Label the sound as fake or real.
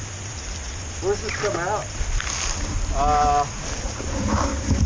real